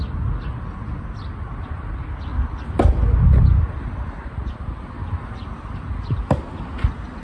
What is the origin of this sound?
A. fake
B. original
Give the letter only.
B